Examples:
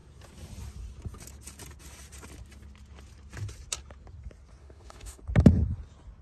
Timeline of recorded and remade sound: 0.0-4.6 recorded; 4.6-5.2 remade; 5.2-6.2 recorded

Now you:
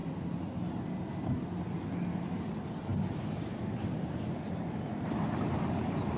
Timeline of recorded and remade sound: 0.0-1.5 remade; 1.5-6.2 recorded

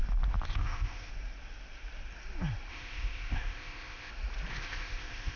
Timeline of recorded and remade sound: 0.0-0.5 recorded; 0.5-1.1 remade; 1.1-2.7 recorded; 2.7-4.1 remade; 4.1-4.5 recorded; 4.5-5.4 remade

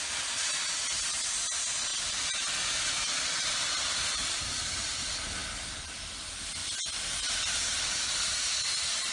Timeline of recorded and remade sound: 0.0-1.9 recorded; 1.9-5.0 remade; 5.0-9.1 recorded

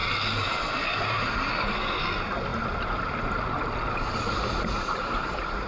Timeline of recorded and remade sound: 0.0-5.7 recorded

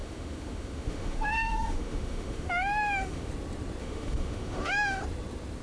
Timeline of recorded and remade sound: 0.0-3.3 remade; 3.3-3.8 recorded; 3.8-5.0 remade; 5.0-5.6 recorded